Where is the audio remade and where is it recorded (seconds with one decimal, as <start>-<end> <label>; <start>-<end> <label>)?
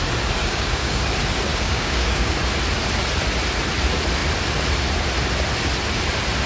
0.0-0.4 recorded; 0.4-1.0 remade; 1.0-1.5 recorded; 1.5-2.3 remade; 2.3-6.5 recorded